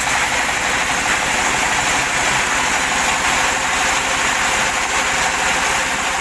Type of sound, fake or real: real